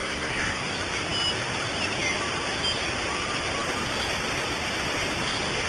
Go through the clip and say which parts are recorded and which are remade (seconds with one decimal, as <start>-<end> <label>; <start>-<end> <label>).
0.0-0.7 remade; 0.7-5.7 recorded